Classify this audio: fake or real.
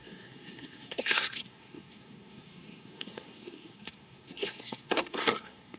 fake